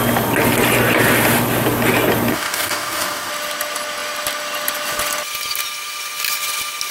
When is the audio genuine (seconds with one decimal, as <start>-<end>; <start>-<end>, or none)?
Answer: 0.0-2.3; 3.3-6.9